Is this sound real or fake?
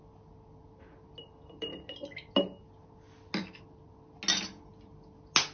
real